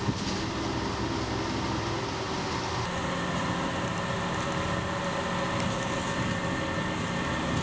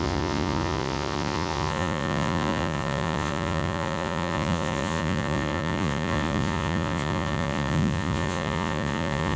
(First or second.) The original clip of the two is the first